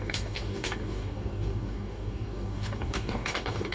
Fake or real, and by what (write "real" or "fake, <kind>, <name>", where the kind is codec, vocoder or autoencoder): fake, codec, DAC